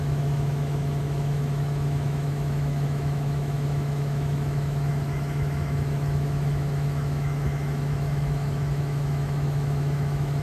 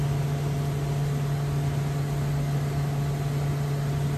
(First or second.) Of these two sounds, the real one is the second